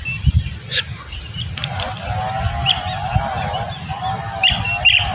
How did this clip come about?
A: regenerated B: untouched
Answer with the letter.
B